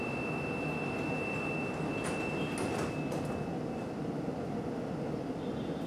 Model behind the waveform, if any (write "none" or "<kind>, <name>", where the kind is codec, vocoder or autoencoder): none